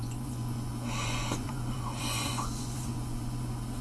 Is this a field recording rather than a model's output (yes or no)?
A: no